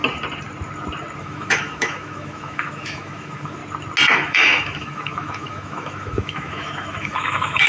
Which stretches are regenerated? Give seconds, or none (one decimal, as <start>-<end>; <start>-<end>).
1.2-3.6; 4.1-7.7

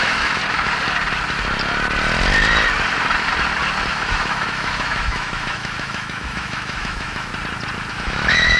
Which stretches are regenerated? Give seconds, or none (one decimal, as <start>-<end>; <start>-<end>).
0.0-0.4; 3.9-7.3; 7.9-8.6

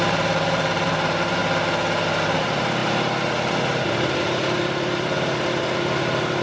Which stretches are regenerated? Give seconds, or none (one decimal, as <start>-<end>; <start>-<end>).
0.0-1.4; 2.1-6.4

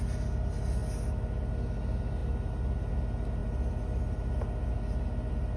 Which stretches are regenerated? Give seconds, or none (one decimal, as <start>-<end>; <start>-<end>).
none